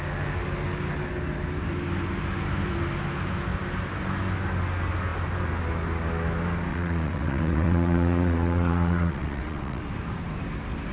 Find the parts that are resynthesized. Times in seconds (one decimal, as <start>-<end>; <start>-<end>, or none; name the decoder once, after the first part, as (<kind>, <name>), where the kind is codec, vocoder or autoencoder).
6.7-9.9 (vocoder, WaveNeXt)